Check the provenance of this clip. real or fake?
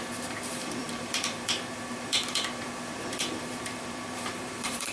fake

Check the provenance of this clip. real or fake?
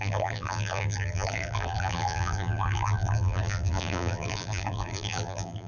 fake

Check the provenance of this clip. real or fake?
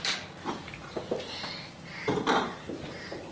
real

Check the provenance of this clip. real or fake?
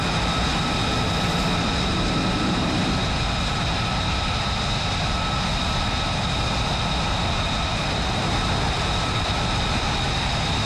real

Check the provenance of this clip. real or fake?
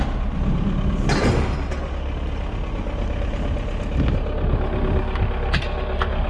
real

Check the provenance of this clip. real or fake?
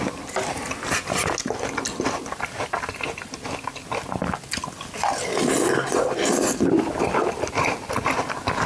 real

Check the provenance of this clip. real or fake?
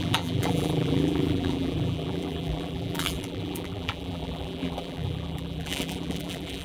fake